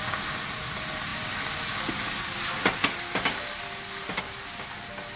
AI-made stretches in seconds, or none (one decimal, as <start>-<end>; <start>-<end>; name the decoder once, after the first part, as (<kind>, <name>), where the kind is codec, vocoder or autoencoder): none